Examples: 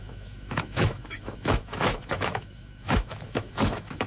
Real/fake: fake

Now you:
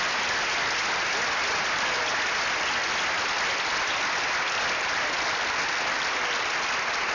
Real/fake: real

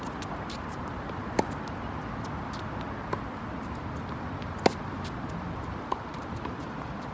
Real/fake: real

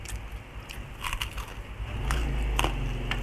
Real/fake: real